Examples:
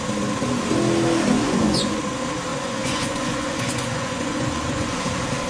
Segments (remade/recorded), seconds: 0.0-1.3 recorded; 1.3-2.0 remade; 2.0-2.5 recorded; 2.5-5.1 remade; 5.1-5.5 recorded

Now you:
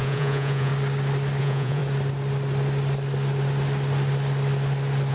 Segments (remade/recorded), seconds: 0.0-0.7 remade; 0.7-1.4 recorded; 1.4-1.8 remade; 1.8-5.1 recorded

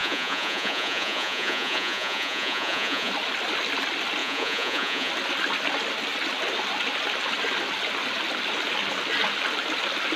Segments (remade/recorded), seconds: 0.0-3.1 remade; 3.1-4.2 recorded; 4.2-5.1 remade; 5.1-10.2 recorded

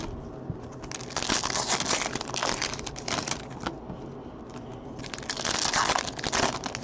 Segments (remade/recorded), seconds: 0.0-6.8 recorded

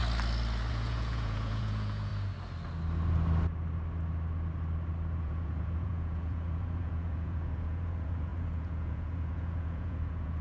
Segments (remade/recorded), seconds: 0.0-0.7 recorded; 0.7-2.1 remade; 2.1-5.2 recorded; 5.2-10.4 remade

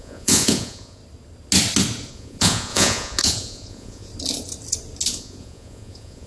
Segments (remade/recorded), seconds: 0.0-1.0 remade; 1.0-2.1 recorded; 2.1-4.1 remade; 4.1-5.1 recorded; 5.1-6.3 remade

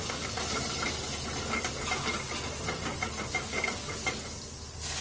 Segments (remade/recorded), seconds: 0.0-5.0 recorded